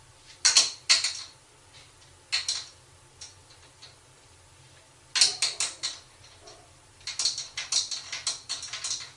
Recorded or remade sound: recorded